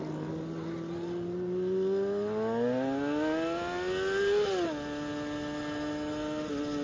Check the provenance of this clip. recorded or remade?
recorded